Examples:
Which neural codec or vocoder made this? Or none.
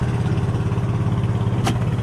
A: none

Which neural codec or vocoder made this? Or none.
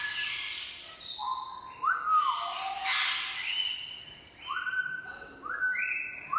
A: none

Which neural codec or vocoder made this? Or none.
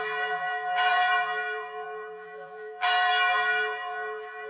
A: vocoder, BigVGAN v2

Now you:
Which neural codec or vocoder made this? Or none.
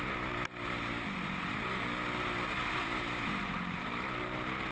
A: none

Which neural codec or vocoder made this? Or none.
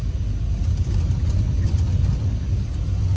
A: none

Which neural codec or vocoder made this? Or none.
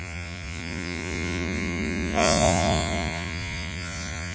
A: vocoder, Vocos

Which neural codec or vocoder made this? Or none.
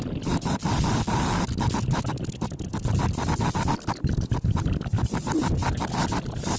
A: none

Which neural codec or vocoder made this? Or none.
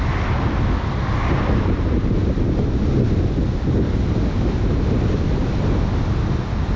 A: none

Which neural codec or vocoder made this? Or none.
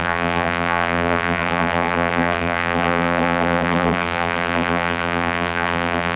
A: vocoder, BigVGAN v2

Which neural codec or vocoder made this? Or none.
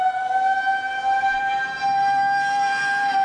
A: vocoder, BigVGAN v2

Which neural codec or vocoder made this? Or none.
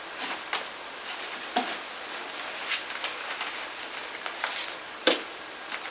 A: none